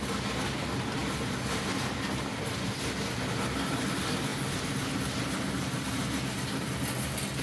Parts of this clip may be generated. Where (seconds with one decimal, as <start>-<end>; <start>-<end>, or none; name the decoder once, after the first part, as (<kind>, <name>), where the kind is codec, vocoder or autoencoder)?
none